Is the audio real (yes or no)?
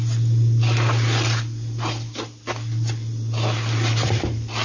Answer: yes